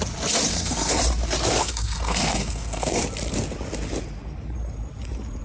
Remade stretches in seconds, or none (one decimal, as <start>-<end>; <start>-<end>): 0.5-1.0; 1.6-3.0